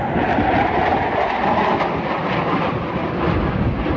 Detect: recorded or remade recorded